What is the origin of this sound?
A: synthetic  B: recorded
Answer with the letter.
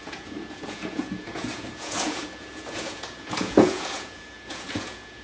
A